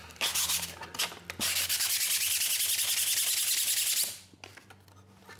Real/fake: real